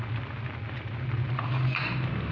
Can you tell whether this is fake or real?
real